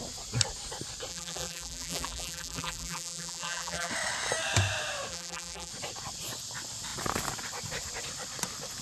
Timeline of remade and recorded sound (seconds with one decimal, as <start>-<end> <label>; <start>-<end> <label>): 0.0-1.1 recorded; 1.1-3.9 remade; 3.9-5.1 recorded; 5.1-5.7 remade; 5.7-8.8 recorded

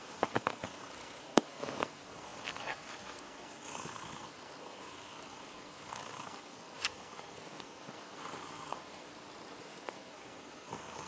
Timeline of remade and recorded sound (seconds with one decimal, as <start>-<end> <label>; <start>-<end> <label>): 0.0-9.1 remade; 9.1-9.6 recorded; 9.6-11.1 remade

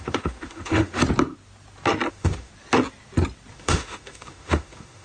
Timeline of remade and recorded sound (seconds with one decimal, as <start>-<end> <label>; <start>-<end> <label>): 0.0-1.0 remade; 1.0-2.1 recorded; 2.1-2.5 remade; 2.5-3.5 recorded; 3.5-5.0 remade

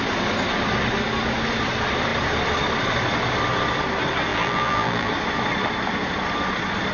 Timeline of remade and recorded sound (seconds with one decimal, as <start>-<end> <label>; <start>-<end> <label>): 0.0-4.3 recorded; 4.3-5.1 remade; 5.1-6.9 recorded

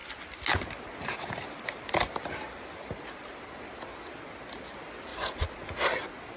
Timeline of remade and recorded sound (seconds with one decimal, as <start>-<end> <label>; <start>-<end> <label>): 0.0-5.1 recorded; 5.1-5.7 remade; 5.7-6.4 recorded

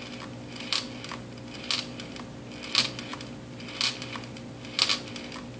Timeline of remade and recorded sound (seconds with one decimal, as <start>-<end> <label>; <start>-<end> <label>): 0.0-5.6 recorded

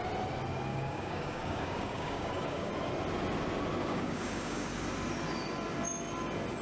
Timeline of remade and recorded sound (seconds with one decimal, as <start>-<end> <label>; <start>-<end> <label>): 0.0-0.7 recorded; 0.7-2.7 remade; 2.7-3.8 recorded; 3.8-4.7 remade; 4.7-6.6 recorded